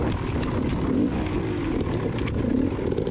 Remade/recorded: recorded